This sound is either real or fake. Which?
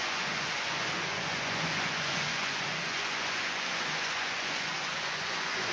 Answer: fake